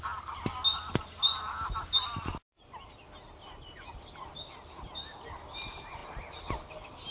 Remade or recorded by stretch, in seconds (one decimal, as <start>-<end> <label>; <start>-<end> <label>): 0.0-7.1 recorded